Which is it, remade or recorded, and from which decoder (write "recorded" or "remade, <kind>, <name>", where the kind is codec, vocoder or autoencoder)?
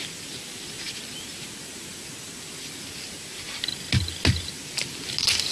recorded